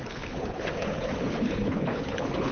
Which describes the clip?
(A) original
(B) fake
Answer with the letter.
B